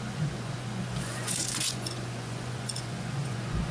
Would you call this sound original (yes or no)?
no